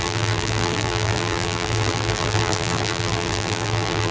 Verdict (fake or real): fake